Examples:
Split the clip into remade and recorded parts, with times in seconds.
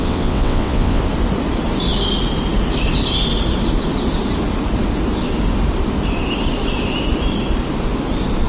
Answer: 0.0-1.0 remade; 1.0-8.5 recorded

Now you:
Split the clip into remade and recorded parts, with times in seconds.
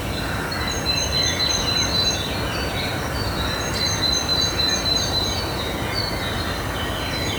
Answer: 0.0-4.3 recorded; 4.3-5.4 remade; 5.4-7.4 recorded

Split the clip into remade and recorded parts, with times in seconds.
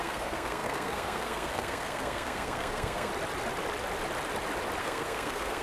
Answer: 0.0-3.1 remade; 3.1-4.8 recorded; 4.8-5.6 remade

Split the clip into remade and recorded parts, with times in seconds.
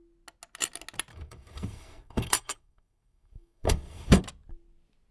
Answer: 0.0-1.1 recorded; 1.1-4.2 remade; 4.2-5.1 recorded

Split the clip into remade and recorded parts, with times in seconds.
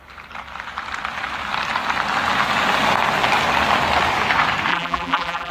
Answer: 0.0-4.7 recorded; 4.7-5.5 remade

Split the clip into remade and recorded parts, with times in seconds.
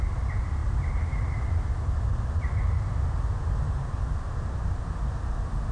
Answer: 0.0-5.7 recorded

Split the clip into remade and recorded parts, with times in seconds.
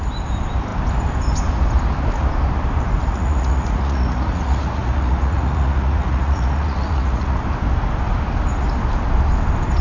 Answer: 0.0-3.0 recorded; 3.0-7.4 remade; 7.4-9.8 recorded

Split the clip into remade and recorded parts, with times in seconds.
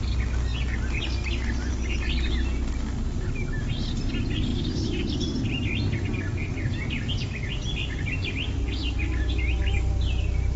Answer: 0.0-10.6 recorded